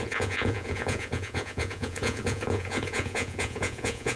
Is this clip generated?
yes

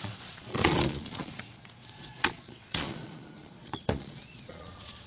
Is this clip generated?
yes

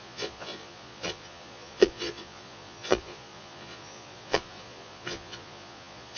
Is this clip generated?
yes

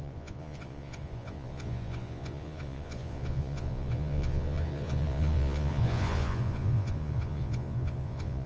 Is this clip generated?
yes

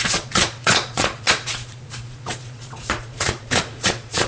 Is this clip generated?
yes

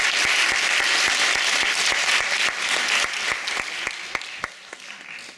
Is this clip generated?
no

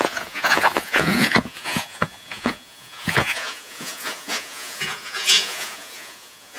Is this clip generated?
yes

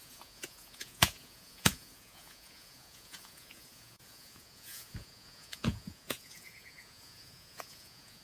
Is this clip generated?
yes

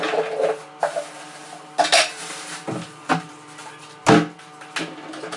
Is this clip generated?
no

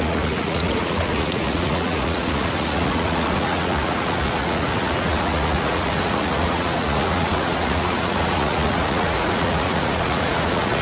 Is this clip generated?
yes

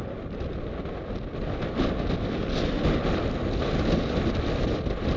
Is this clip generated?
no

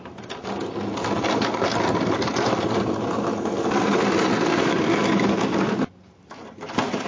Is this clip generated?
no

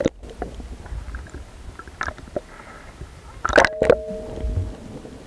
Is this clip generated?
no